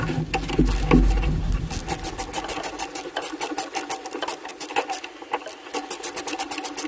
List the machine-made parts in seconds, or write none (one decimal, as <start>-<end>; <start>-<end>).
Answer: none